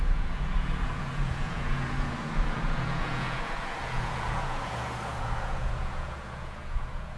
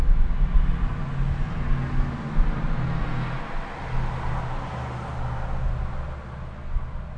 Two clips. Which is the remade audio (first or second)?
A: first